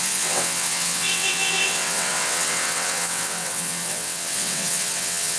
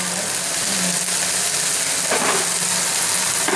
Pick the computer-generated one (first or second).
first